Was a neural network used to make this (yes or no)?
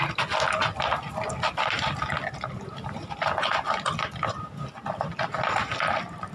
no